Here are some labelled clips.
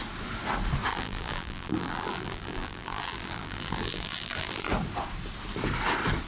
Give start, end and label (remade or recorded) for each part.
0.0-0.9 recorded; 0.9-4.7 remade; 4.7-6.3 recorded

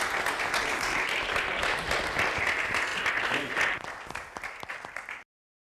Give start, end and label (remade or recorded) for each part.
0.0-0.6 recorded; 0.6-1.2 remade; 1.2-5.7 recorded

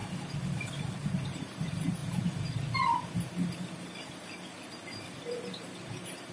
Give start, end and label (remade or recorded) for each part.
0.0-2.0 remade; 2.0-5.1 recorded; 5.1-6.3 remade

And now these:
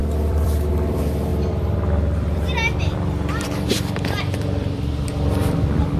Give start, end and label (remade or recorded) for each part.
0.0-0.7 remade; 0.7-1.3 recorded; 1.3-4.9 remade; 4.9-6.0 recorded

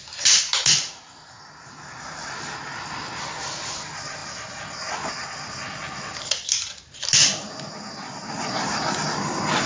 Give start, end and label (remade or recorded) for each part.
0.0-9.7 recorded

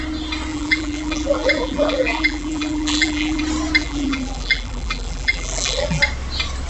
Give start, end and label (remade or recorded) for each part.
0.0-0.5 recorded; 0.5-3.4 remade; 3.4-3.8 recorded; 3.8-6.0 remade; 6.0-6.7 recorded

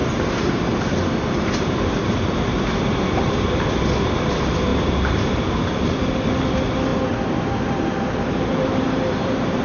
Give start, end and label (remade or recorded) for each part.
0.0-0.6 remade; 0.6-2.5 recorded; 2.5-3.7 remade; 3.7-4.7 recorded; 4.7-5.9 remade; 5.9-6.9 recorded; 6.9-9.6 remade